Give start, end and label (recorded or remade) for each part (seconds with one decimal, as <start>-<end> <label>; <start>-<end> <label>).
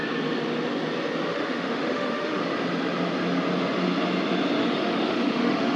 0.0-1.3 recorded; 1.3-2.4 remade; 2.4-4.6 recorded; 4.6-5.8 remade